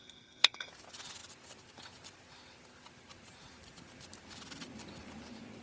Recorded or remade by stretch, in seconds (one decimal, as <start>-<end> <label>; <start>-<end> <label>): 0.0-0.7 remade; 0.7-5.6 recorded